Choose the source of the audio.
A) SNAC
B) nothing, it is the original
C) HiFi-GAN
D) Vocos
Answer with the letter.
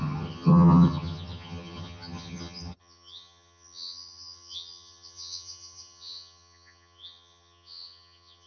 C